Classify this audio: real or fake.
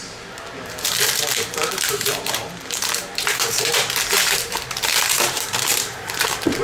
fake